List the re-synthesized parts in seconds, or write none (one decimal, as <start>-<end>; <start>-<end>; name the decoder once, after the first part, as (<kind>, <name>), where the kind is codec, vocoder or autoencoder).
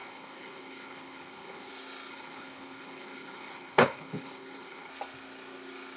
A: 0.0-1.7 (codec, HILCodec); 2.1-4.9